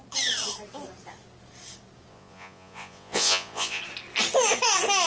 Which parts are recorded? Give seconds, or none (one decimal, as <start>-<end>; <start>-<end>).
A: 0.0-2.1; 3.8-5.1